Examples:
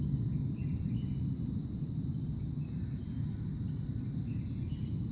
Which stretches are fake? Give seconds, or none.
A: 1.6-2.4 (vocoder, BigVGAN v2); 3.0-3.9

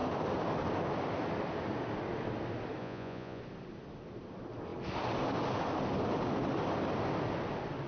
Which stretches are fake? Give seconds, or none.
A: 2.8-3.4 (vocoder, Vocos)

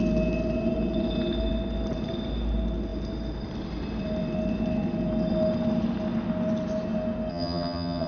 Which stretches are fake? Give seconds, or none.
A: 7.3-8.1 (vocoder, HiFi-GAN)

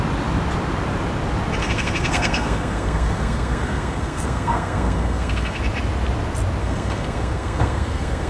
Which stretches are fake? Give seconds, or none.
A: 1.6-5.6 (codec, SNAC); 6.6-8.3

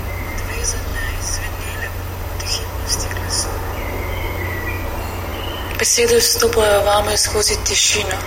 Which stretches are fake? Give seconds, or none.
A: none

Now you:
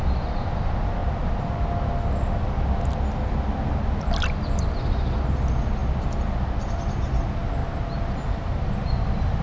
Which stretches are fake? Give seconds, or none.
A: none

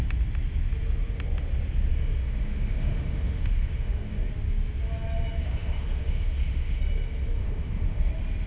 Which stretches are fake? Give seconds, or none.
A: 1.9-4.3 (autoencoder, DAC-VAE); 5.4-6.8; 7.4-8.1